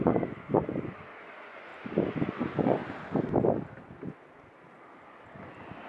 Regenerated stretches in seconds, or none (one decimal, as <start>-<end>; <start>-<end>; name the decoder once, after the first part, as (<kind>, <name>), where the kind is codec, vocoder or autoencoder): 0.0-0.7 (vocoder, Vocos); 1.2-1.7; 2.3-2.8